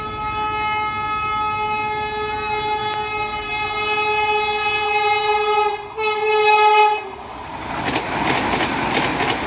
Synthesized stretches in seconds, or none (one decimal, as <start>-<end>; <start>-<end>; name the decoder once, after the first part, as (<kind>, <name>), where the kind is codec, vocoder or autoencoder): none